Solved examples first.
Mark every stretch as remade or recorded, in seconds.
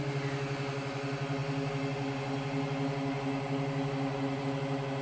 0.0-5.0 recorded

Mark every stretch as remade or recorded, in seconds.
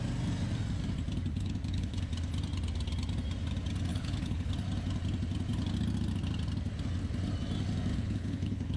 0.0-1.3 recorded; 1.3-2.0 remade; 2.0-3.9 recorded; 3.9-4.5 remade; 4.5-7.9 recorded; 7.9-8.8 remade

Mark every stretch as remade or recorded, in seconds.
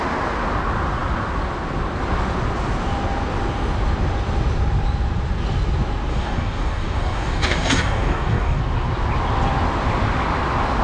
0.0-6.1 recorded; 6.1-8.6 remade; 8.6-10.8 recorded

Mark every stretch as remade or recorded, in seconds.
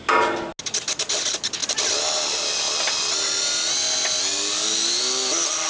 0.0-5.7 recorded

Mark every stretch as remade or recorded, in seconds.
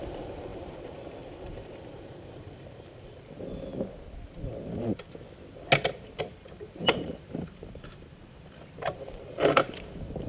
0.0-3.7 remade; 3.7-6.2 recorded; 6.2-10.3 remade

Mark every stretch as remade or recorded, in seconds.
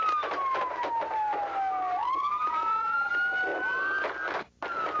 0.0-2.4 recorded; 2.4-3.1 remade; 3.1-5.0 recorded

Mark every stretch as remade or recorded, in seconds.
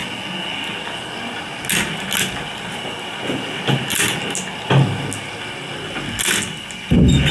0.0-7.3 recorded